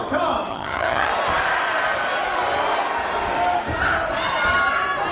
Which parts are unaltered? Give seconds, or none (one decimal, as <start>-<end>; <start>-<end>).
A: 0.0-0.5; 1.1-5.1